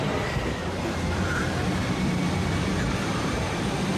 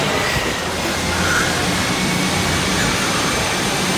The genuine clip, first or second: second